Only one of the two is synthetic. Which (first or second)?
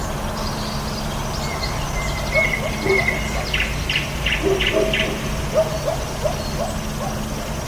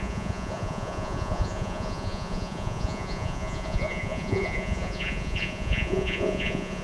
second